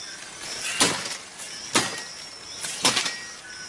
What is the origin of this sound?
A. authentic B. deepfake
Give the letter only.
A